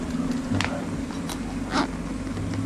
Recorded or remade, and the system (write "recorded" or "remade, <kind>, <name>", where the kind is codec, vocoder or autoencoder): recorded